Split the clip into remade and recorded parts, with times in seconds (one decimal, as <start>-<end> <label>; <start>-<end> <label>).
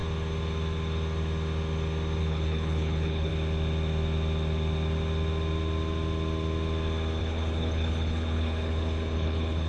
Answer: 0.0-2.2 recorded; 2.2-3.3 remade; 3.3-7.2 recorded; 7.2-9.7 remade